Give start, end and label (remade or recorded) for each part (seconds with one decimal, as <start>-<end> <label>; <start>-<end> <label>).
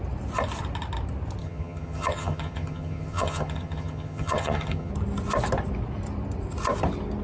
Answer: 0.0-1.4 recorded; 1.4-4.9 remade; 4.9-7.2 recorded